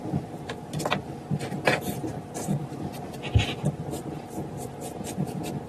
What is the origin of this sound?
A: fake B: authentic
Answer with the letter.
B